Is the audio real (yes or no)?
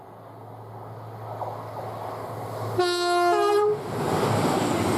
yes